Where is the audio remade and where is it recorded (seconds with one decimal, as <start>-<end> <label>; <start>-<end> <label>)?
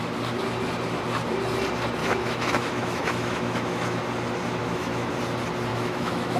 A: 0.0-2.0 recorded; 2.0-4.0 remade; 4.0-4.6 recorded; 4.6-5.1 remade; 5.1-5.7 recorded; 5.7-6.4 remade